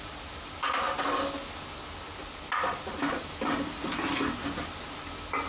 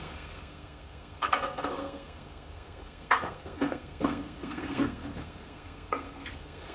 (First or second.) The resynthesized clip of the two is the second